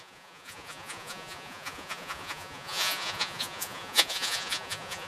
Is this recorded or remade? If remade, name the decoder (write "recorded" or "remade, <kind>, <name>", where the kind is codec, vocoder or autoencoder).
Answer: remade, vocoder, Vocos